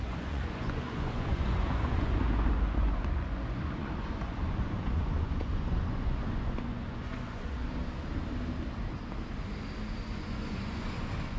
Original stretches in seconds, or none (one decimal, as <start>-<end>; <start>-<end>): 7.6-10.0